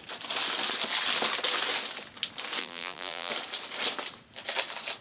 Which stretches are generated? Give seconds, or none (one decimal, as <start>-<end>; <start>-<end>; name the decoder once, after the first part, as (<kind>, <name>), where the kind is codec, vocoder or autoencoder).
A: 2.6-3.3 (vocoder, BigVGAN v2)